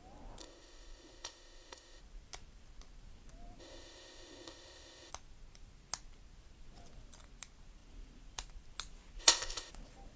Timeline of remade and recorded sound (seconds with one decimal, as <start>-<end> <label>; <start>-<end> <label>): 0.0-0.4 recorded; 0.4-2.0 remade; 2.0-3.6 recorded; 3.6-5.1 remade; 5.1-9.2 recorded; 9.2-9.7 remade; 9.7-10.2 recorded